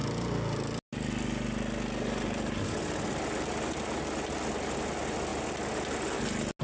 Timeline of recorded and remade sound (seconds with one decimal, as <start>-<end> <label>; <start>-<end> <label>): 0.0-6.6 recorded